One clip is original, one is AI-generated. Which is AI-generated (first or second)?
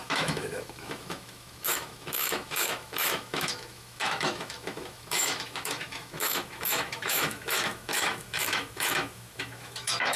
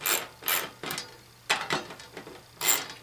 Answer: first